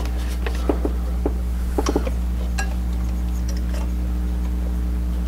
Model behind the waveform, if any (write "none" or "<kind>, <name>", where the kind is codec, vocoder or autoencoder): none